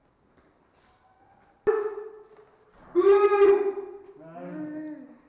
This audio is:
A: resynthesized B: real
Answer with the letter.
B